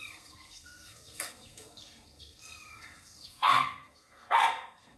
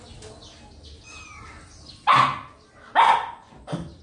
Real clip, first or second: second